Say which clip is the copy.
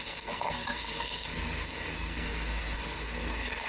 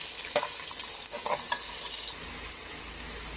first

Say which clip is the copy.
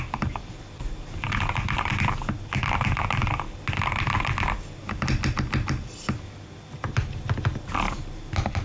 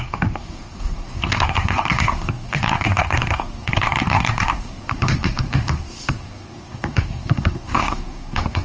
second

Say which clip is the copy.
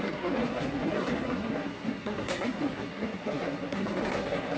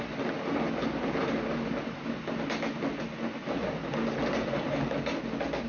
first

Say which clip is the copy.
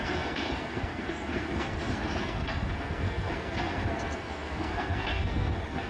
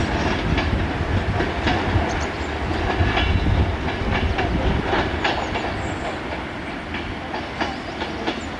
first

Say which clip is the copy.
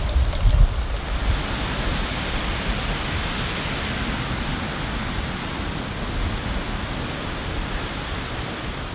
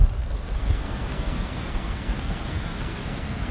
second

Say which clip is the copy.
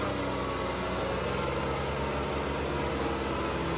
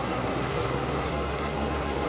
second